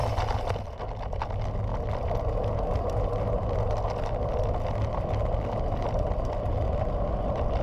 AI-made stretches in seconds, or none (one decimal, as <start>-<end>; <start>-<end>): none